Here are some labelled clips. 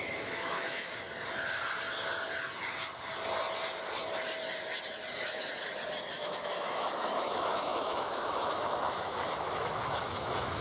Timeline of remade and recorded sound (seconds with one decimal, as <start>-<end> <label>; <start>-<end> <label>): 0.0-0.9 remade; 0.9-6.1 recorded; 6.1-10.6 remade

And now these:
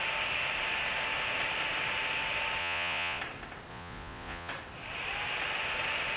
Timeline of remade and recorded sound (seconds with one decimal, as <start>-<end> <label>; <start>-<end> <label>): 0.0-2.6 recorded; 2.6-3.2 remade; 3.2-3.7 recorded; 3.7-4.5 remade; 4.5-6.2 recorded

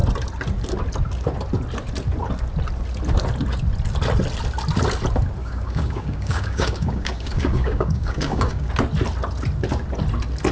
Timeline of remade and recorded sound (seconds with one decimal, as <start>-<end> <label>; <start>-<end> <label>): 0.0-5.4 recorded; 5.4-8.7 remade; 8.7-10.5 recorded

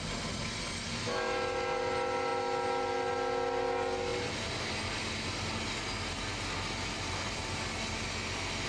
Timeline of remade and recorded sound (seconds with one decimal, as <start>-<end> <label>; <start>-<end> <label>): 0.0-8.7 recorded

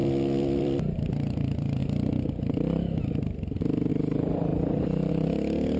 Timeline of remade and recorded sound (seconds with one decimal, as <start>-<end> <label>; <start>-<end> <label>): 0.0-0.6 recorded; 0.6-1.8 remade; 1.8-3.9 recorded; 3.9-5.8 remade